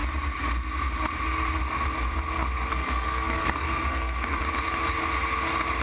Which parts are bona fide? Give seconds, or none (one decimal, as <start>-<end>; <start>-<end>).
0.0-2.7; 4.4-5.8